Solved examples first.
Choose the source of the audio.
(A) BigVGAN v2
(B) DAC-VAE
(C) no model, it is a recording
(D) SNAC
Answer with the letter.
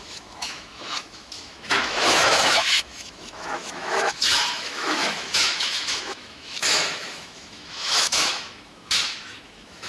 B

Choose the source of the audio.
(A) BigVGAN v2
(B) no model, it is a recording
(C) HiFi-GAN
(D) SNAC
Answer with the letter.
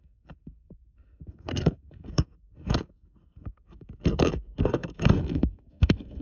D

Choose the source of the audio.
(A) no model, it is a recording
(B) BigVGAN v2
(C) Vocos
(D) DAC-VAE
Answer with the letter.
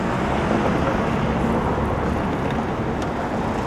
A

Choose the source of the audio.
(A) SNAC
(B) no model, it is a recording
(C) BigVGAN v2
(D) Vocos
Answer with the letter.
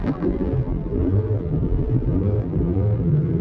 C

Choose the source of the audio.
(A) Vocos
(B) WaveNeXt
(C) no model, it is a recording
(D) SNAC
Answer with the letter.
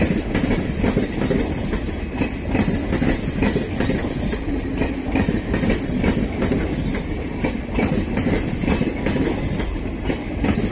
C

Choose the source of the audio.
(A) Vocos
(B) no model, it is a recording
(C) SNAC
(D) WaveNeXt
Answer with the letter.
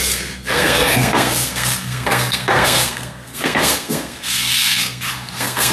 C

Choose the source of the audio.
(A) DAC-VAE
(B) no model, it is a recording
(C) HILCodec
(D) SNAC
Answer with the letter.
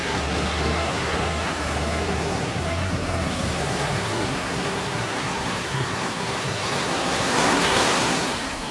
D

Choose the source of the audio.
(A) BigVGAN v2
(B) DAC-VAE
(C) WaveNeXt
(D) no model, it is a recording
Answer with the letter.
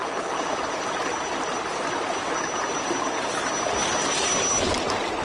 D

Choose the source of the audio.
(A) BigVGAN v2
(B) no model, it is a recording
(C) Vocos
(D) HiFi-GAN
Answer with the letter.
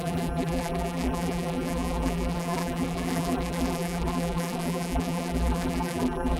A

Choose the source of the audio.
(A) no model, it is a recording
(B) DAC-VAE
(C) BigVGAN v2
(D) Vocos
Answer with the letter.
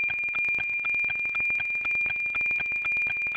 A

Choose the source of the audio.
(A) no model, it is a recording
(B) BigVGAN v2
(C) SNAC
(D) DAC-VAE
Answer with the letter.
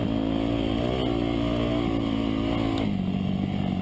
A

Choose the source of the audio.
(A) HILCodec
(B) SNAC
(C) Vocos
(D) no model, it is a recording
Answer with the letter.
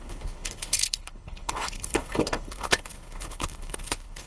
A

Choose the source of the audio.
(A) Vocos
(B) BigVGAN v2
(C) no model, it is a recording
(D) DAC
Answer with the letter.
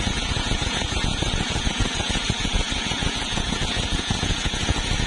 A